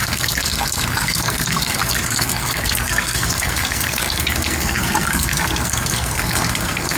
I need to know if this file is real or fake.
fake